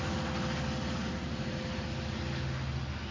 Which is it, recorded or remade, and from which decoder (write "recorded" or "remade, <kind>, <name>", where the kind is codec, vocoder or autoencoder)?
recorded